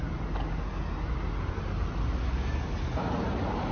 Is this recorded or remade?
recorded